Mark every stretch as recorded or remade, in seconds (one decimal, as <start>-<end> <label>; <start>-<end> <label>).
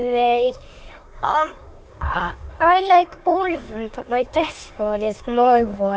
0.0-6.0 remade